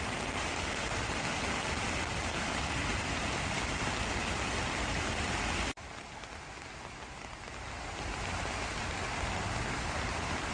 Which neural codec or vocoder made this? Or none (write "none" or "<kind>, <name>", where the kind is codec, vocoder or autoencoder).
none